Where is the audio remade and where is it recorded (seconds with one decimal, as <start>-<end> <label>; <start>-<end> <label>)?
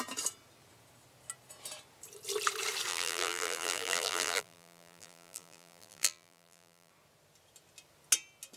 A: 0.0-2.9 recorded; 2.9-6.9 remade; 6.9-8.6 recorded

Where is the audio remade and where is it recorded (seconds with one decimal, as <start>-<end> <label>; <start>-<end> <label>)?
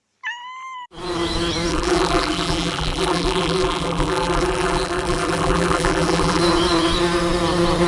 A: 0.0-1.7 recorded; 1.7-6.4 remade; 6.4-7.9 recorded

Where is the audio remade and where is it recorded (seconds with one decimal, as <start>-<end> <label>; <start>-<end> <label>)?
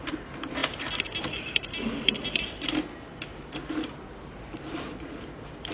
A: 0.0-0.6 remade; 0.6-4.0 recorded; 4.0-5.7 remade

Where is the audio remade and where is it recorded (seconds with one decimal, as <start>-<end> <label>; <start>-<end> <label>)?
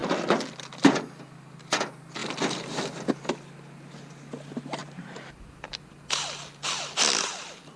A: 0.0-4.8 recorded; 4.8-5.4 remade; 5.4-7.8 recorded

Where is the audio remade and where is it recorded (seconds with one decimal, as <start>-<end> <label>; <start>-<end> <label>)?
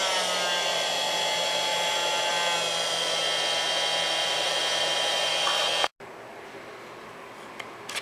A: 0.0-4.2 recorded; 4.2-5.3 remade; 5.3-8.0 recorded